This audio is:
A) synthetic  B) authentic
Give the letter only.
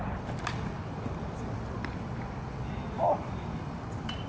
B